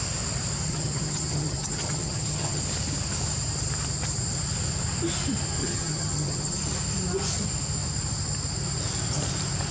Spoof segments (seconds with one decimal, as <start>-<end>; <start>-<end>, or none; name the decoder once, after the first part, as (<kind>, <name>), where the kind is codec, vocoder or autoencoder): 0.7-2.6 (vocoder, HiFi-GAN); 5.6-6.6